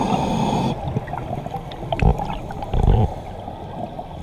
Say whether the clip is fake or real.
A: real